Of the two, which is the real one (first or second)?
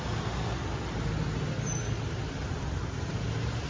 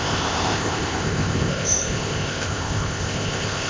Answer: first